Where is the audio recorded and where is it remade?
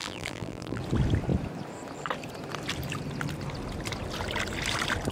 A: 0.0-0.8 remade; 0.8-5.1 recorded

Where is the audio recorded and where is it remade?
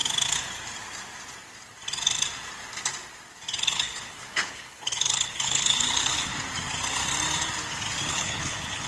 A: 0.0-3.7 recorded; 3.7-6.3 remade; 6.3-8.1 recorded; 8.1-8.9 remade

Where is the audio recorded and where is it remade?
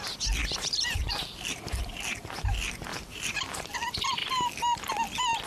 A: 0.0-0.4 recorded; 0.4-1.0 remade; 1.0-2.9 recorded; 2.9-3.7 remade; 3.7-5.5 recorded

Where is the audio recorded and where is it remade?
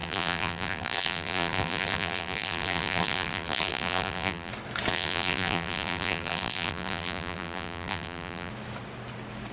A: 0.0-4.5 remade; 4.5-4.9 recorded; 4.9-8.5 remade; 8.5-9.5 recorded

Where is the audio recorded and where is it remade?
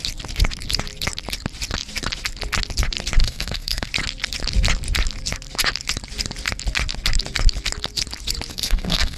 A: 0.0-3.2 recorded; 3.2-3.9 remade; 3.9-8.5 recorded; 8.5-9.2 remade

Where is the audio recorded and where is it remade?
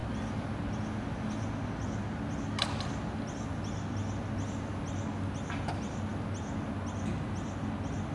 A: 0.0-8.1 recorded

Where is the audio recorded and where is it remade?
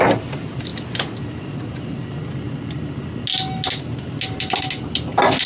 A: 0.0-5.5 recorded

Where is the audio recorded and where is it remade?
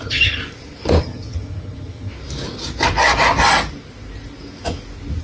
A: 0.0-0.4 remade; 0.4-1.0 recorded; 1.0-2.1 remade; 2.1-5.2 recorded